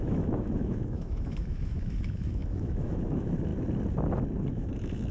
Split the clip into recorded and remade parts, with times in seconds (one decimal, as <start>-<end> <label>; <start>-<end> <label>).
0.0-3.5 remade; 3.5-4.5 recorded; 4.5-5.1 remade

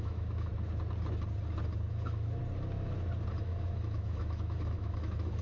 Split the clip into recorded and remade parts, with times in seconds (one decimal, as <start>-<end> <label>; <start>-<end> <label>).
0.0-0.5 remade; 0.5-1.9 recorded; 1.9-2.4 remade; 2.4-3.4 recorded; 3.4-5.4 remade

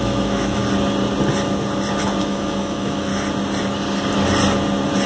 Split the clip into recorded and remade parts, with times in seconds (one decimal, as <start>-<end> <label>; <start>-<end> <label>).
0.0-0.6 remade; 0.6-2.2 recorded; 2.2-3.1 remade; 3.1-5.1 recorded

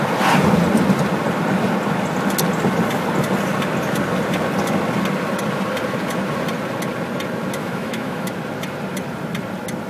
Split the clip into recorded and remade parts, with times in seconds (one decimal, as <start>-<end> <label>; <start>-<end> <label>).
0.0-7.6 recorded; 7.6-8.3 remade; 8.3-9.9 recorded